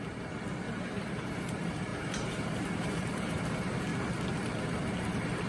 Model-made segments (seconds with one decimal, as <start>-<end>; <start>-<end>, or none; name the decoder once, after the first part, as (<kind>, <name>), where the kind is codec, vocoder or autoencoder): 0.0-3.9 (vocoder, BigVGAN v2); 4.7-5.5